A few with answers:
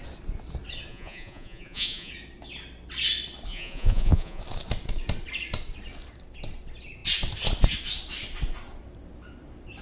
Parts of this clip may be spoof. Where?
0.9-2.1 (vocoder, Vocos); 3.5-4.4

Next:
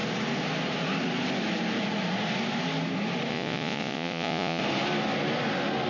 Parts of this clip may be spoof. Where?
3.3-4.6 (vocoder, Vocos)